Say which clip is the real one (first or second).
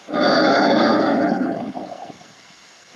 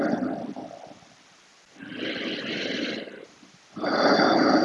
second